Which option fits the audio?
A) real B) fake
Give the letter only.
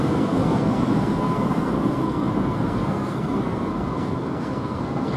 B